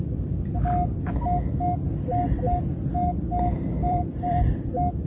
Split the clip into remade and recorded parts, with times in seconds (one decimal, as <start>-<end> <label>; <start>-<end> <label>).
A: 0.0-3.8 recorded; 3.8-4.5 remade; 4.5-5.1 recorded